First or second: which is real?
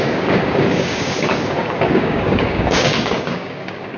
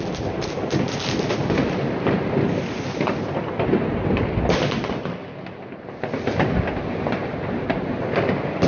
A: second